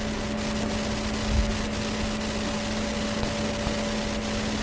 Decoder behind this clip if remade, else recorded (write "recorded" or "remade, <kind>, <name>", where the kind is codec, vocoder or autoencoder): recorded